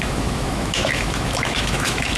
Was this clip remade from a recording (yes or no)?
yes